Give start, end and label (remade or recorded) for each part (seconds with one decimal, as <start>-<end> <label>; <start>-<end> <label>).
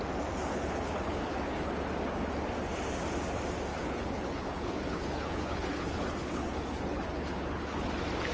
0.0-0.5 recorded; 0.5-1.7 remade; 1.7-3.7 recorded; 3.7-7.9 remade; 7.9-8.3 recorded